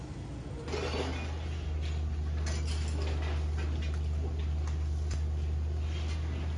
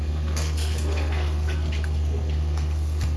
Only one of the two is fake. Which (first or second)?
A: second